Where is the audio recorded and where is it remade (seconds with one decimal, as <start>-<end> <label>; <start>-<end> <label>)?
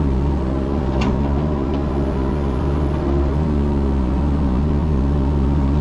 0.0-5.8 remade